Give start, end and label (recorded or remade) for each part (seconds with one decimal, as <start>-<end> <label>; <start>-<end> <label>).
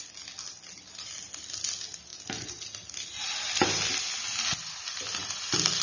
0.0-5.8 recorded